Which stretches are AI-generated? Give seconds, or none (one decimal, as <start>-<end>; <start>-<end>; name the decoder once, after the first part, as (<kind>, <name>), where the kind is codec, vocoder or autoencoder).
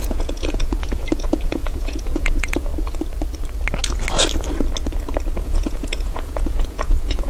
0.0-2.7 (vocoder, Vocos); 5.4-7.3